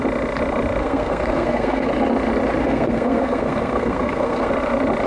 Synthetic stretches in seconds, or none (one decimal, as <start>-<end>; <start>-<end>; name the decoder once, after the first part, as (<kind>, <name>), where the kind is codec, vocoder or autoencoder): 0.8-1.9 (codec, SNAC); 2.6-4.5